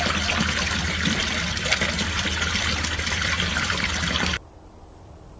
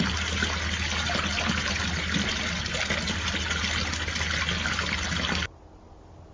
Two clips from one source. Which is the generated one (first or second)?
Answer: first